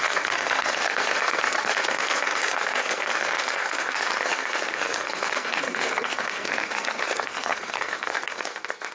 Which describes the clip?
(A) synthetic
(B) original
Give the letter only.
A